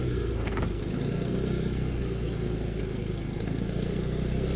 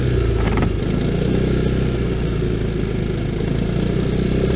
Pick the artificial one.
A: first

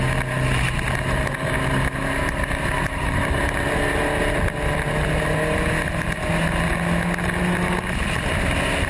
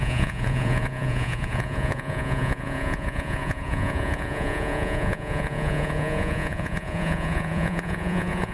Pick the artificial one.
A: second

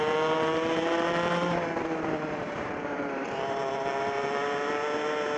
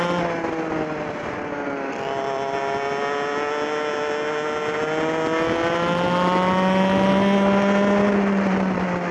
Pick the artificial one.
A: first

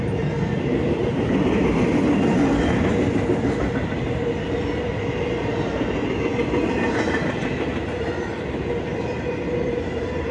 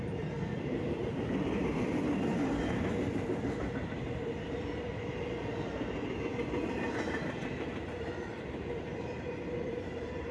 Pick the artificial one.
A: second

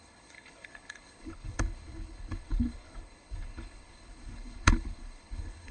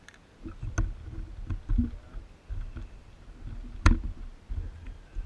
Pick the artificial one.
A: first